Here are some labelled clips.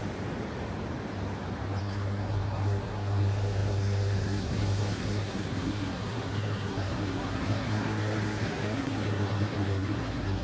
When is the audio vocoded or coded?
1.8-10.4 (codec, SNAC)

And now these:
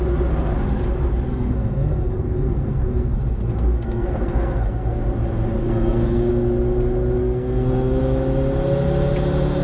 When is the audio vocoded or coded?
1.3-5.0 (codec, SNAC); 5.6-6.3; 7.2-8.0